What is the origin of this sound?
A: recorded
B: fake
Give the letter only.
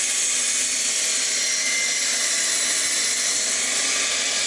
A